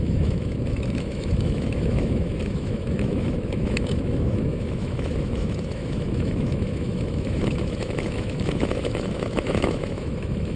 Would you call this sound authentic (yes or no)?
no